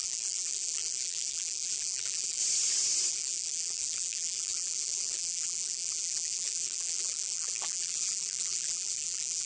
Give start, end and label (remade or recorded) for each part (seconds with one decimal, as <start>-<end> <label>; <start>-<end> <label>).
0.0-2.4 remade; 2.4-3.1 recorded; 3.1-9.5 remade

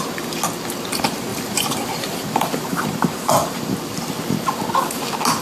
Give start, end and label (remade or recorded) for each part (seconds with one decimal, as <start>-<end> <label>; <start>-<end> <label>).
0.0-1.3 recorded; 1.3-4.5 remade; 4.5-5.4 recorded